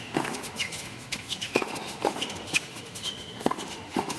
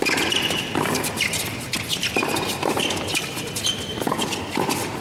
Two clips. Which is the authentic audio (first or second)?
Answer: second